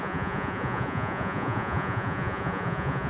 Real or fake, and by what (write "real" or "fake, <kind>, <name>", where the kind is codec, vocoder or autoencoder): fake, vocoder, Vocos